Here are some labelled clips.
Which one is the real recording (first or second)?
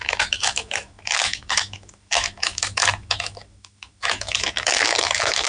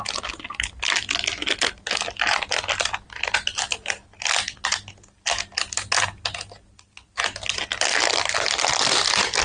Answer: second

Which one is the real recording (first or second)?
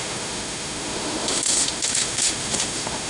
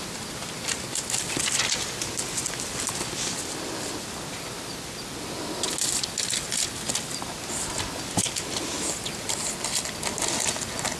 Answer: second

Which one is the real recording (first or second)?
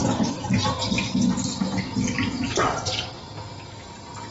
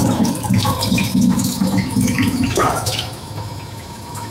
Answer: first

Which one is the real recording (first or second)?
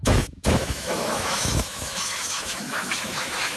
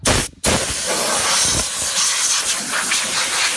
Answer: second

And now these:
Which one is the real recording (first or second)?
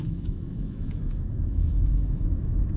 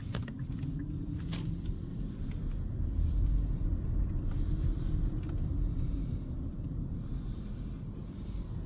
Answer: second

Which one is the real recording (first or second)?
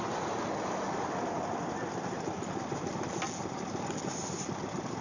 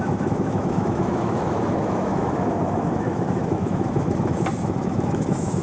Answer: first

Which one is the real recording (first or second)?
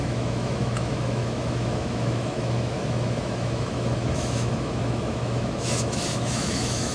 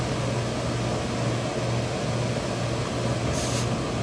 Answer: second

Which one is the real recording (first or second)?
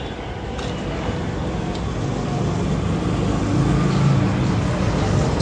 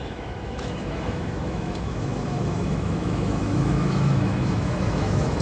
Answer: first